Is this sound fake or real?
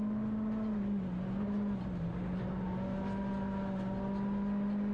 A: real